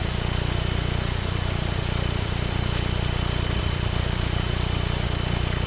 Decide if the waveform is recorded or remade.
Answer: remade